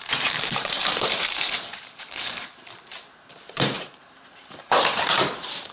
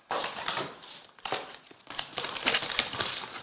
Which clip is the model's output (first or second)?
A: first